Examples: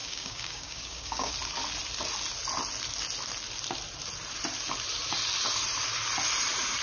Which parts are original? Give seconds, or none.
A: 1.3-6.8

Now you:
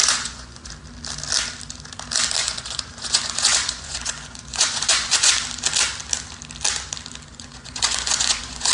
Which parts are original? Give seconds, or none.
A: 0.7-2.4; 5.3-7.3

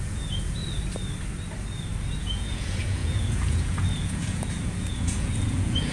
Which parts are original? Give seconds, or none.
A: 0.6-2.2

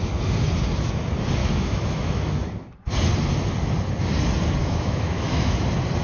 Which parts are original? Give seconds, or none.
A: 0.0-1.4; 2.5-4.6; 5.6-6.0